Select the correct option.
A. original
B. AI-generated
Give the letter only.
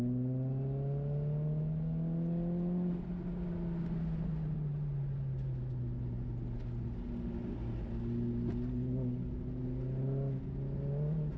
A